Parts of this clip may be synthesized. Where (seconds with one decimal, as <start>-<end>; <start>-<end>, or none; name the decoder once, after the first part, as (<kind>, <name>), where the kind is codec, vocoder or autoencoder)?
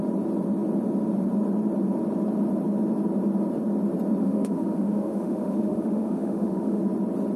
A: 4.2-6.8 (autoencoder, DAC-VAE)